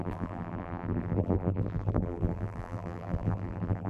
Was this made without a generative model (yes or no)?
no